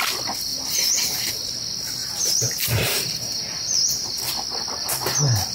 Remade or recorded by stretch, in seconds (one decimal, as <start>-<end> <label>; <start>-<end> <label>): 0.0-0.5 recorded; 0.5-1.3 remade; 1.3-2.0 recorded; 2.0-4.2 remade; 4.2-5.5 recorded